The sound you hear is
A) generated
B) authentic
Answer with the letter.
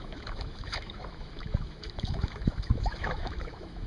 A